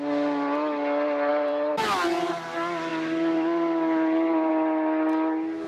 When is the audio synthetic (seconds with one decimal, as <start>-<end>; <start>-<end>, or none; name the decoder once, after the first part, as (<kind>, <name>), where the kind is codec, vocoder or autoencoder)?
1.3-1.8 (vocoder, BigVGAN v2); 2.9-4.5